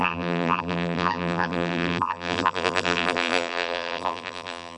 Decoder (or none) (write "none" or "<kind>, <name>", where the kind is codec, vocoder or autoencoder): vocoder, BigVGAN v2